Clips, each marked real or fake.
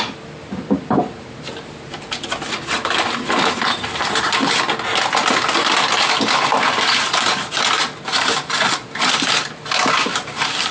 fake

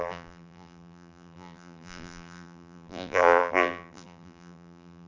fake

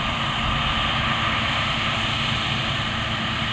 real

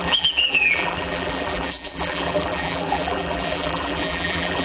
fake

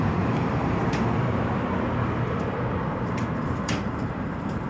fake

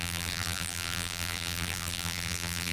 fake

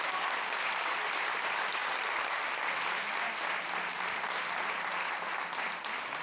real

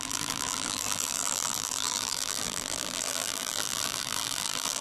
fake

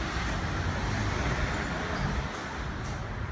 fake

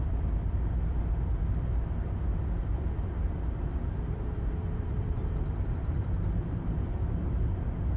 fake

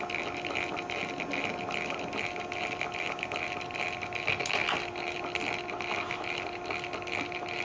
real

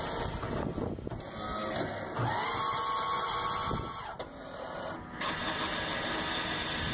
real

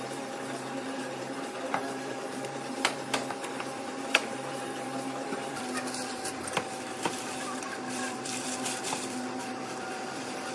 fake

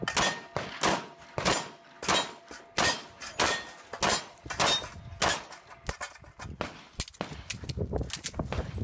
real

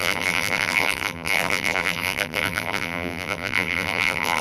fake